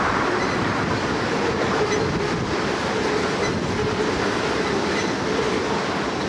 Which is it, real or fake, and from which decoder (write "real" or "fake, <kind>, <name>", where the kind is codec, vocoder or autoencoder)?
fake, vocoder, BigVGAN v2